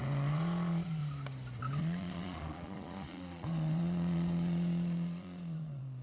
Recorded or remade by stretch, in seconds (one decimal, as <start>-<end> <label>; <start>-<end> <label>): 0.0-1.0 remade; 1.0-1.8 recorded; 1.8-6.0 remade